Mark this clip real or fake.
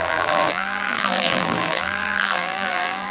fake